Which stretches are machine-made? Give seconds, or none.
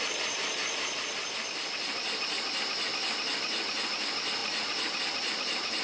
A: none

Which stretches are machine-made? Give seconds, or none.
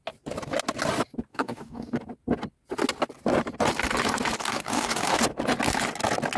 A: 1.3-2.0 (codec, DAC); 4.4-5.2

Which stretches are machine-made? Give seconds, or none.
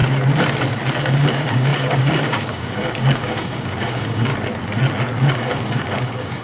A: 1.0-4.3 (codec, DAC); 5.2-6.4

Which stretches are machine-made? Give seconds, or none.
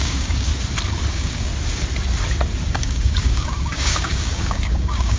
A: 0.0-0.5 (codec, DAC); 1.1-1.5; 2.7-5.2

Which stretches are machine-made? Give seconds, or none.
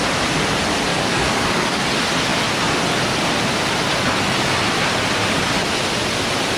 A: 0.9-1.8 (codec, DAC)